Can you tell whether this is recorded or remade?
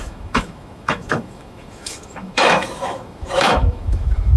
remade